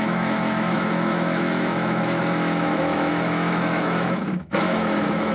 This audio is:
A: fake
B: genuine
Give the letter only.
A